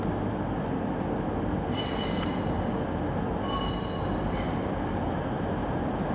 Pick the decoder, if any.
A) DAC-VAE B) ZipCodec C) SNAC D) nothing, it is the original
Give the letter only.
D